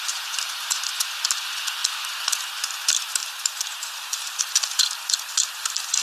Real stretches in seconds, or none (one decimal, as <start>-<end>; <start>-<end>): 0.0-3.2; 4.4-6.0